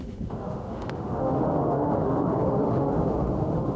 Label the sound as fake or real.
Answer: fake